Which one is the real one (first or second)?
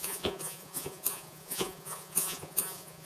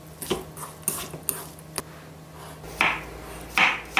second